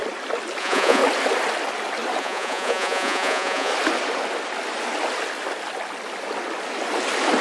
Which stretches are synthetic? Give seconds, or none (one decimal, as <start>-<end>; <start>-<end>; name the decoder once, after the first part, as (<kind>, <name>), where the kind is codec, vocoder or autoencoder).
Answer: 0.6-1.0 (vocoder, Vocos); 2.2-3.7